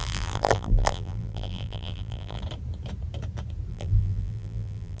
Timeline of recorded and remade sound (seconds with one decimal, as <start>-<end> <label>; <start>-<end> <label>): 0.0-2.4 remade; 2.4-3.7 recorded; 3.7-5.0 remade

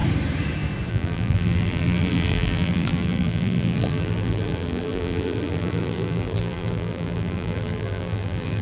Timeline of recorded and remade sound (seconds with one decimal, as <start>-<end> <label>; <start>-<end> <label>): 0.0-0.9 recorded; 0.9-8.6 remade

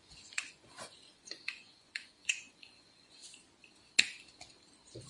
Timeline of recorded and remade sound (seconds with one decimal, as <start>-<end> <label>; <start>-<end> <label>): 0.0-3.2 remade; 3.2-5.1 recorded

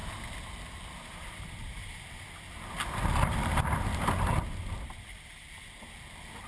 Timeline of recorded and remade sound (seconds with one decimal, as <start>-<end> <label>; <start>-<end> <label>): 0.0-6.5 recorded

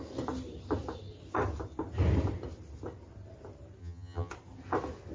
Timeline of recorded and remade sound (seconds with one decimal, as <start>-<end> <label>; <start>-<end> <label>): 0.0-3.8 recorded; 3.8-4.3 remade; 4.3-5.1 recorded

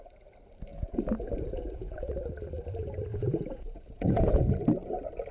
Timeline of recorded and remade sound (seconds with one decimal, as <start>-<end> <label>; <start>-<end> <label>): 0.0-0.7 recorded; 0.7-2.1 remade; 2.1-3.1 recorded; 3.1-4.3 remade; 4.3-5.3 recorded